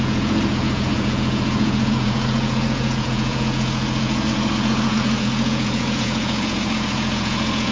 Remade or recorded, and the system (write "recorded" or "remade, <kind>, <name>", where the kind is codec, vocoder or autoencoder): remade, vocoder, Vocos